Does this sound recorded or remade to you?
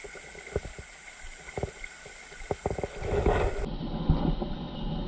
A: recorded